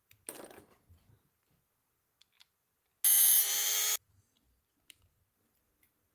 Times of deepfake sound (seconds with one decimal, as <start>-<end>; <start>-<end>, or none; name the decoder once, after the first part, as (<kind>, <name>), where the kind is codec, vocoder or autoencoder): none